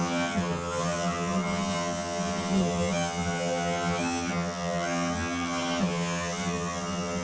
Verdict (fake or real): fake